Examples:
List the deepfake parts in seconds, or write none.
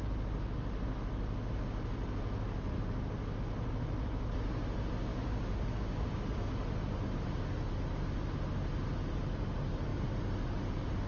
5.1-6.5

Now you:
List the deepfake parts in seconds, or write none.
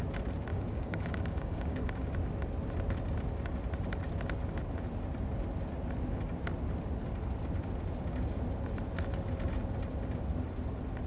0.5-2.0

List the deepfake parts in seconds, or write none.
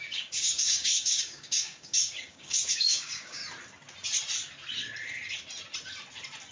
0.0-3.4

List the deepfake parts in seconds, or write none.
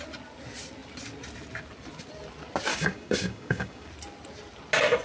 2.7-3.9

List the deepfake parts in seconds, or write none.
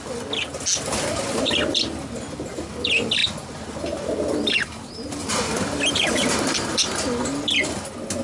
none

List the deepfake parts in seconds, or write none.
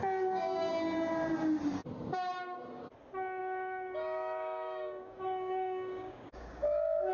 0.0-0.7; 3.4-7.1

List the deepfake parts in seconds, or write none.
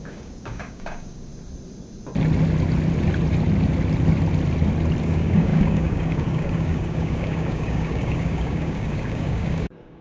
0.0-1.3; 5.0-10.0